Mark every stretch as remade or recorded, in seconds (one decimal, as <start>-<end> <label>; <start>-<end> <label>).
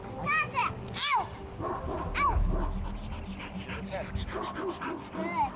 0.0-5.6 recorded